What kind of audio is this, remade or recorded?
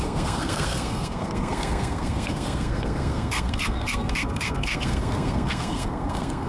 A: remade